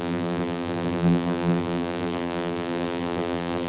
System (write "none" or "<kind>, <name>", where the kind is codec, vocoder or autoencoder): vocoder, BigVGAN v2